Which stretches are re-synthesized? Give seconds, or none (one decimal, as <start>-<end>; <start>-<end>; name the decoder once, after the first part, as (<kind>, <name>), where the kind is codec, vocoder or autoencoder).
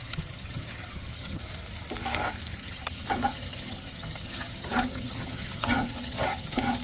0.0-1.4 (vocoder, HiFi-GAN); 2.6-6.8